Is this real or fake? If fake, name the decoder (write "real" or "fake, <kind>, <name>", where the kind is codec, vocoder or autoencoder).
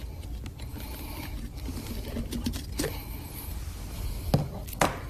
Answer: real